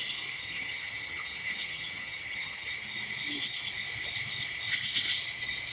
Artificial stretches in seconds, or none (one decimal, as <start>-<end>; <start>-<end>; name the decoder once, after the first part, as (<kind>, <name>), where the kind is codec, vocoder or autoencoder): 0.4-2.7 (vocoder, HiFi-GAN)